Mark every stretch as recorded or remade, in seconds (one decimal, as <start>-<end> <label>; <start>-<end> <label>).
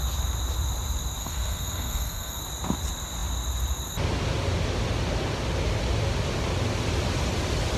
0.0-1.2 recorded; 1.2-2.4 remade; 2.4-7.8 recorded